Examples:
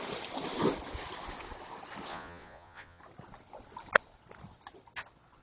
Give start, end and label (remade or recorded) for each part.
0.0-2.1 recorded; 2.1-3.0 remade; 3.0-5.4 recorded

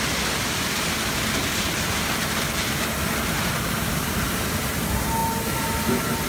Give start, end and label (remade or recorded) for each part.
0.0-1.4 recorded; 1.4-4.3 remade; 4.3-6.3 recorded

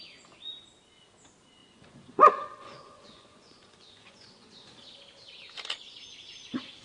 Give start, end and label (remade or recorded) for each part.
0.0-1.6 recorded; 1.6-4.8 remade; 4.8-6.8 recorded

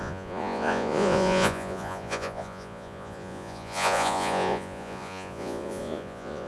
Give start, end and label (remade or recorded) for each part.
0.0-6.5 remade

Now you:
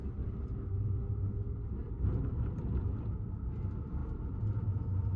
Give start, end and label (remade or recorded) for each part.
0.0-5.2 recorded

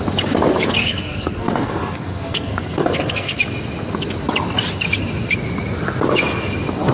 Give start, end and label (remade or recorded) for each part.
0.0-0.8 recorded; 0.8-3.4 remade; 3.4-6.9 recorded

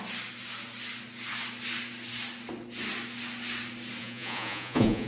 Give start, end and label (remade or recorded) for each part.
0.0-4.0 recorded; 4.0-5.1 remade

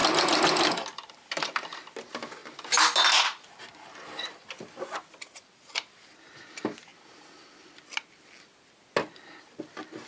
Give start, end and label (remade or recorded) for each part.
0.0-2.4 remade; 2.4-5.6 recorded; 5.6-6.9 remade; 6.9-9.6 recorded; 9.6-10.1 remade